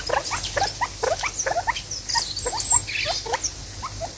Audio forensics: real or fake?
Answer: real